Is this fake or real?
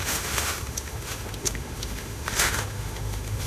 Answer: fake